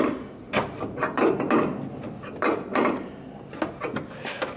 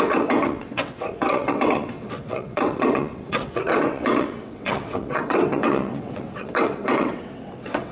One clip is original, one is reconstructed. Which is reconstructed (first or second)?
second